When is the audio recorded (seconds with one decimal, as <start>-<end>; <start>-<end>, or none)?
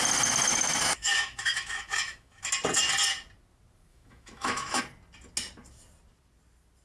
0.0-0.5; 2.5-3.9; 4.8-6.8